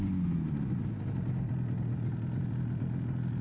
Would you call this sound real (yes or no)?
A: yes